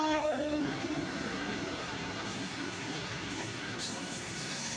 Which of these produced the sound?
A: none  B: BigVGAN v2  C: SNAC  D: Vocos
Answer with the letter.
C